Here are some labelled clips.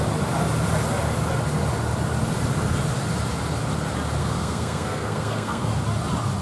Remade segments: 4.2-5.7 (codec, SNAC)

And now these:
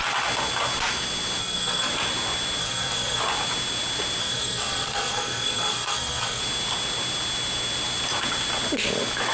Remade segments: 1.4-1.9 (codec, SNAC); 2.6-3.2; 4.2-6.4

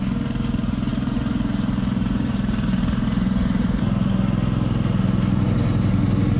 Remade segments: 0.9-4.1 (vocoder, BigVGAN v2)

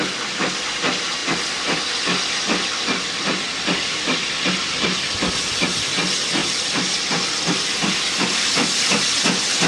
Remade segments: 1.2-1.8 (vocoder, BigVGAN v2); 7.8-8.7